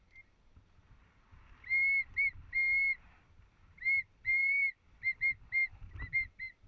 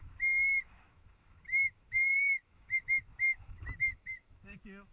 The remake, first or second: second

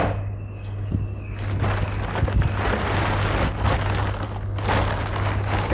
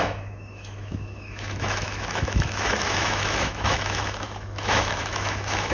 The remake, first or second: second